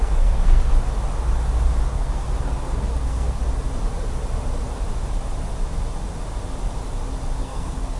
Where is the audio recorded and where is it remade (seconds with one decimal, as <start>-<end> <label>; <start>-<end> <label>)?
0.0-0.7 remade; 0.7-1.9 recorded; 1.9-3.4 remade; 3.4-7.4 recorded; 7.4-8.0 remade